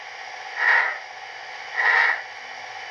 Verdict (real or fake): real